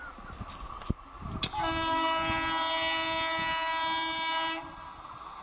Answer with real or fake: real